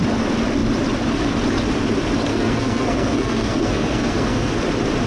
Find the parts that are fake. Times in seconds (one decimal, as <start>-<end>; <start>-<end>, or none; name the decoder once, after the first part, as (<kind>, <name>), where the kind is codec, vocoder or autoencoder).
2.3-4.5 (codec, SNAC)